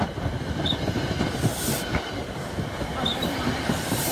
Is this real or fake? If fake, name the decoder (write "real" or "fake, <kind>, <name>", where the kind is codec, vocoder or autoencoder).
real